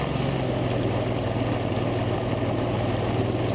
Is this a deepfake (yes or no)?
no